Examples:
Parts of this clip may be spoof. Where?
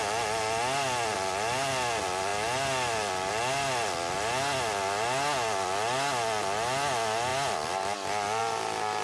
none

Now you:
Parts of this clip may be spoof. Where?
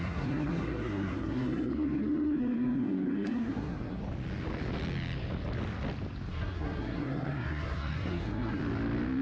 0.0-4.0 (codec, SNAC); 6.3-8.6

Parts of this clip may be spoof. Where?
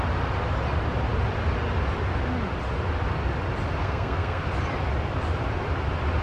3.8-4.4 (codec, SNAC)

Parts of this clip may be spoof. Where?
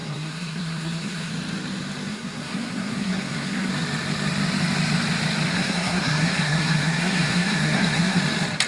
0.0-1.3 (codec, SNAC); 2.1-3.7; 5.5-8.2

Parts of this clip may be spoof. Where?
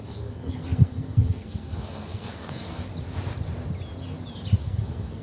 0.0-2.9 (codec, SNAC); 4.6-5.2